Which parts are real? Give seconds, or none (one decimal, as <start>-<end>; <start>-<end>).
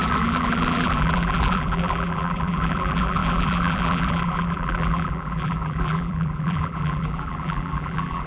none